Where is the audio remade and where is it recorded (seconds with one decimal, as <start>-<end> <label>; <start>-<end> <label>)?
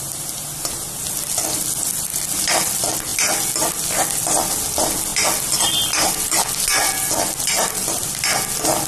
0.0-8.9 recorded